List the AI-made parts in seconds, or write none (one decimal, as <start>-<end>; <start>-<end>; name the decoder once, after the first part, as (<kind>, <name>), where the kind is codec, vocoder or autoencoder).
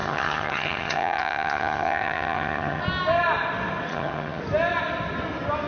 0.0-2.8 (vocoder, HiFi-GAN); 3.9-4.4